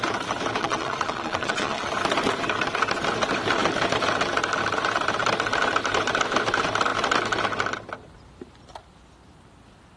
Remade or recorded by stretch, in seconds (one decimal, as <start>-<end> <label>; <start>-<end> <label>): 0.0-0.6 recorded; 0.6-1.9 remade; 1.9-10.0 recorded